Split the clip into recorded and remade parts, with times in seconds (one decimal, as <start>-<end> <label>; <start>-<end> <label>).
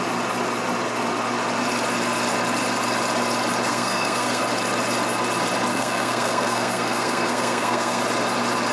0.0-3.7 recorded; 3.7-4.4 remade; 4.4-5.7 recorded; 5.7-8.0 remade; 8.0-8.7 recorded